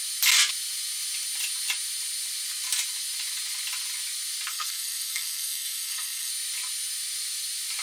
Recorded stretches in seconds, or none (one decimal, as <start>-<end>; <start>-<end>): 0.0-4.5; 6.3-7.8